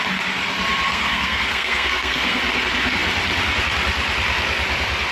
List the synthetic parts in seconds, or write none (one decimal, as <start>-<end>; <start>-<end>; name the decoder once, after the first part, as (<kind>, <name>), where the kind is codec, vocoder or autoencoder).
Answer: 0.9-2.4 (codec, SNAC)